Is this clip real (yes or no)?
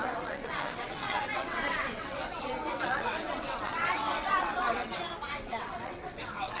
no